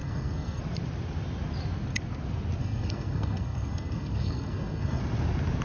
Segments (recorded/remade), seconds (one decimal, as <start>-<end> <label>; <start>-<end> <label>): 0.0-0.6 remade; 0.6-2.6 recorded; 2.6-5.0 remade; 5.0-5.6 recorded